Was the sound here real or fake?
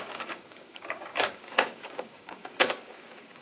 fake